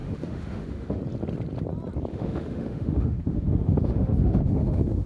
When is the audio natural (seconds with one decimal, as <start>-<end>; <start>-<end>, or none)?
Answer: 1.0-2.1